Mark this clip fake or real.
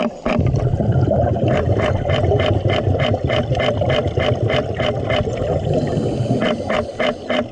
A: real